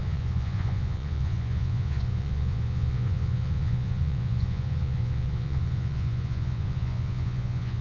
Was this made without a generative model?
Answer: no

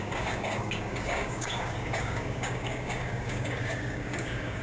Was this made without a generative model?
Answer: no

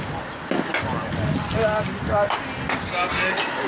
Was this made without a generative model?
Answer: yes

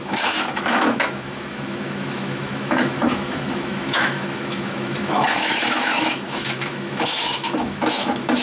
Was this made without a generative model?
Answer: no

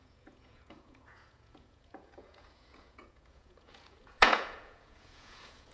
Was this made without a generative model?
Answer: no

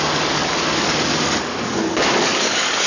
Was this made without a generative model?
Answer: no